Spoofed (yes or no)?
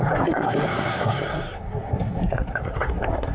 yes